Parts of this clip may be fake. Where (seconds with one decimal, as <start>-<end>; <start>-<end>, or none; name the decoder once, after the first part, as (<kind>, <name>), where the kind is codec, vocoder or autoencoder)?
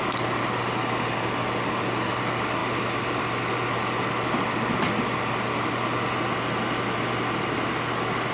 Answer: none